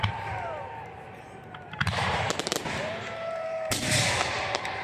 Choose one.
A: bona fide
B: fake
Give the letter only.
B